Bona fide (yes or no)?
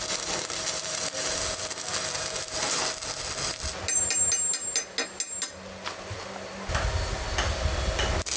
yes